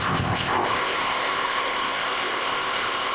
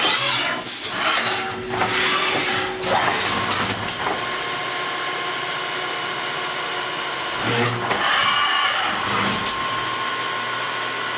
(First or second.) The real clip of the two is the second